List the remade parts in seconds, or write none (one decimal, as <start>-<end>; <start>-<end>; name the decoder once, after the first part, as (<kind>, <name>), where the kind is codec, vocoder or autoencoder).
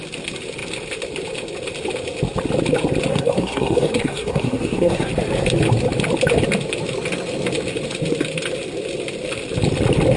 3.1-5.1 (codec, SNAC)